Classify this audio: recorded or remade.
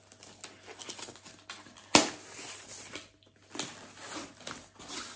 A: recorded